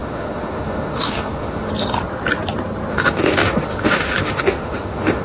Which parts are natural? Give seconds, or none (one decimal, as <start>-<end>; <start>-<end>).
1.7-2.9